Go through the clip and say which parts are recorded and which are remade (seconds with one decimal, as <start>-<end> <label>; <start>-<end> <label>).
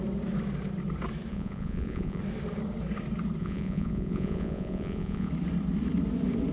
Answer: 0.0-1.3 recorded; 1.3-2.2 remade; 2.2-3.4 recorded; 3.4-5.3 remade; 5.3-6.5 recorded